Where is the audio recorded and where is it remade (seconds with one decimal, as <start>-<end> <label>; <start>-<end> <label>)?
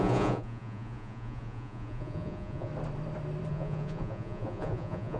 0.0-2.7 remade; 2.7-3.5 recorded; 3.5-5.2 remade